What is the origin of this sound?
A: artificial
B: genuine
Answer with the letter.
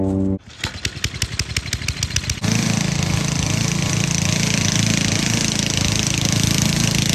B